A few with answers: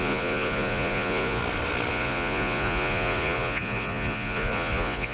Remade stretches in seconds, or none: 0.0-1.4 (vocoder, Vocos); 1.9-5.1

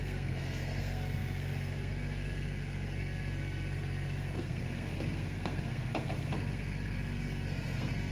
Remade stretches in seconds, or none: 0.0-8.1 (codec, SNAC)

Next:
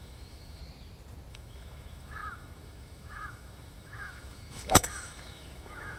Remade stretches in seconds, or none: 0.0-0.6 (autoencoder, DAC-VAE); 1.3-6.0

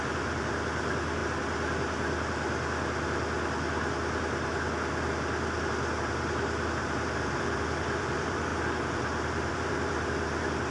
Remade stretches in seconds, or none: 0.0-1.2 (vocoder, BigVGAN v2); 6.0-10.7